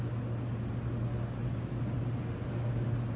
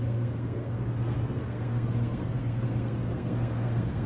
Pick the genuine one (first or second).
first